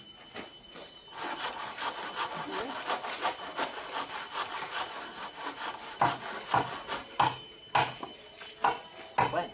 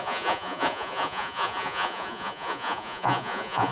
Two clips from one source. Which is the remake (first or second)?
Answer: second